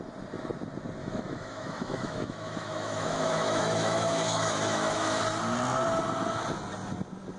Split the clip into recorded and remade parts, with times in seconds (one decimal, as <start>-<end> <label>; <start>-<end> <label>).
0.0-1.0 recorded; 1.0-5.2 remade; 5.2-7.4 recorded